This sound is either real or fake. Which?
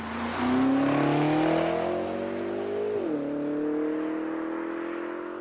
real